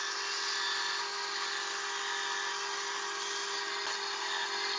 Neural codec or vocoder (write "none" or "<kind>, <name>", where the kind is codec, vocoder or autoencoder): none